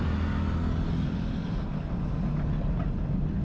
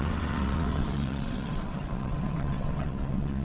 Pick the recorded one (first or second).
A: first